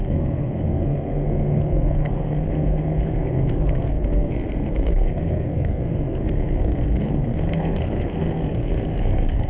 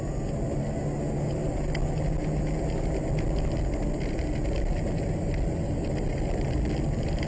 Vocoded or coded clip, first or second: first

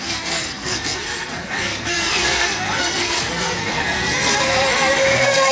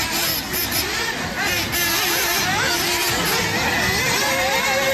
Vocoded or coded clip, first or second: first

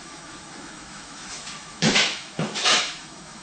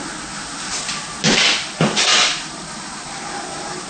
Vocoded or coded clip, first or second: first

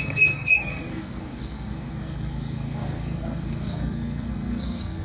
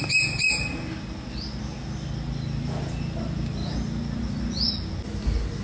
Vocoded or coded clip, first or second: first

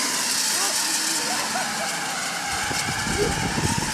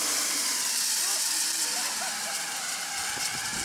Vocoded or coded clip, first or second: second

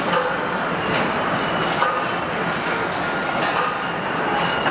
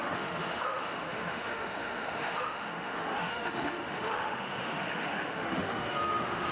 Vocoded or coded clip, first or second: second